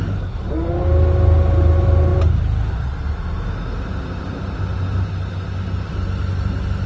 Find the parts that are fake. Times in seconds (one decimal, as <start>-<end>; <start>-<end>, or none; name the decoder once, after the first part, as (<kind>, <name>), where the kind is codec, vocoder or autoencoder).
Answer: none